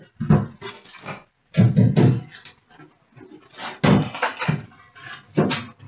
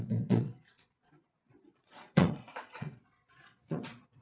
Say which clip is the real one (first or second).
first